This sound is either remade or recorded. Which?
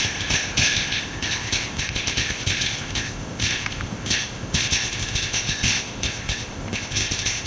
remade